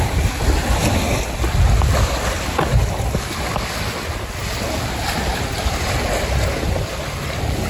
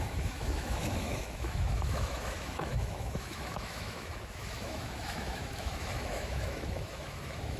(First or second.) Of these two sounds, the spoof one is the second